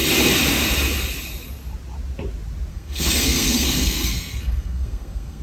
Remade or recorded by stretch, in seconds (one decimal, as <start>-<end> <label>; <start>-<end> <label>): 0.0-2.7 recorded; 2.7-5.4 remade

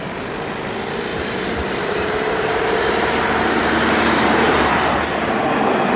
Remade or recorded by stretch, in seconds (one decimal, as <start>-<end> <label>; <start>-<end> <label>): 0.0-1.1 recorded; 1.1-4.7 remade; 4.7-6.0 recorded

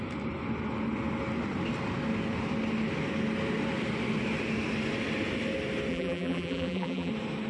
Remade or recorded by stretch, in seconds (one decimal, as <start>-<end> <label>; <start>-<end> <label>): 0.0-5.9 recorded; 5.9-7.1 remade; 7.1-7.5 recorded

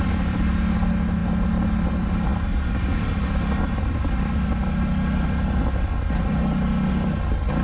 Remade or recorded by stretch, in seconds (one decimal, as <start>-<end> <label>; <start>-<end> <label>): 0.0-7.6 recorded